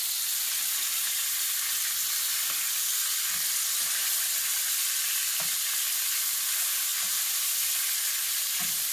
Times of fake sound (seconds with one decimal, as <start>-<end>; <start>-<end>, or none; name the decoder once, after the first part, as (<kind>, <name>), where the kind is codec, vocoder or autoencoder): none